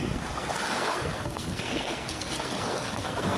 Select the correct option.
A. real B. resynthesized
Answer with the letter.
B